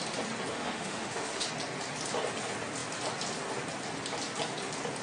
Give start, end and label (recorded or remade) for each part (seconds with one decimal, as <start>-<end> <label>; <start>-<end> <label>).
0.0-0.5 recorded; 0.5-1.4 remade; 1.4-5.0 recorded